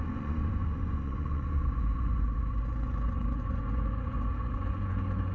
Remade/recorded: remade